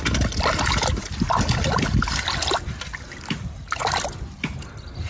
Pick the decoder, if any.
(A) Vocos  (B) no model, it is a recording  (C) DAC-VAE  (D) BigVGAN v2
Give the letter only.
B